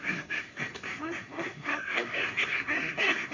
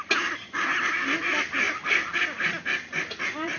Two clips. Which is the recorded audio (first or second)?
second